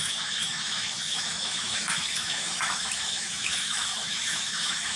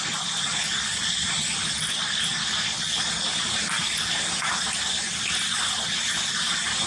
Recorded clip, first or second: second